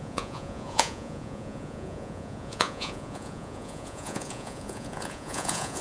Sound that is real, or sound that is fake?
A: fake